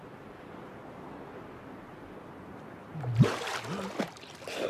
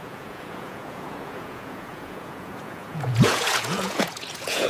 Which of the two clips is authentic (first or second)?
first